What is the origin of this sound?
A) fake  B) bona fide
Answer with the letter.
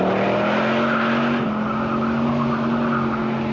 B